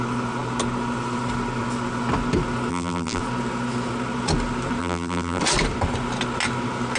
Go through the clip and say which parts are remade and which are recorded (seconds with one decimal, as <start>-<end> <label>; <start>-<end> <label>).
0.0-2.7 recorded; 2.7-3.2 remade; 3.2-4.8 recorded; 4.8-5.4 remade; 5.4-7.0 recorded